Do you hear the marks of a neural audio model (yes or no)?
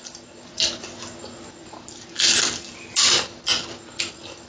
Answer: no